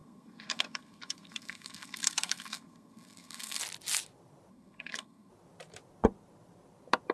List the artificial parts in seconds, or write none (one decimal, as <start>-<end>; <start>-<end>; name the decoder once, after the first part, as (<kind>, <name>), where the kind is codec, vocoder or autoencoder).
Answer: 0.0-3.6 (codec, SNAC); 4.5-5.3